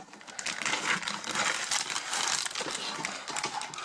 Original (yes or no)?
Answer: yes